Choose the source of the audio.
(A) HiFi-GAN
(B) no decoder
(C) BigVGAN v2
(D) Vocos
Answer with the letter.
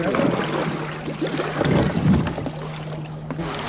B